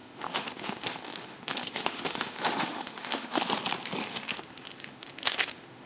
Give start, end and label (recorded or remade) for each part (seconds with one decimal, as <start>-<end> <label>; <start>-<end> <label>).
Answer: 0.0-3.5 remade; 3.5-4.0 recorded; 4.0-5.9 remade